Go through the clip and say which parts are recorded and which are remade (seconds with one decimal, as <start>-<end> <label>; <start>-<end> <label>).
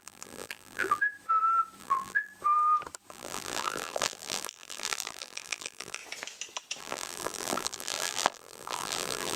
0.0-1.0 remade; 1.0-1.8 recorded; 1.8-2.3 remade; 2.3-3.1 recorded; 3.1-6.0 remade; 6.0-6.8 recorded; 6.8-9.4 remade